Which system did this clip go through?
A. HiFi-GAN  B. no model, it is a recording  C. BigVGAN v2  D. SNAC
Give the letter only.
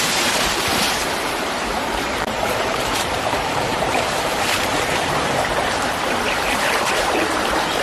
C